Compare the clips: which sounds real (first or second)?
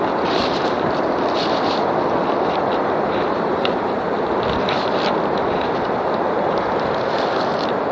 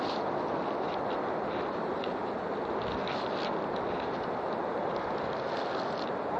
second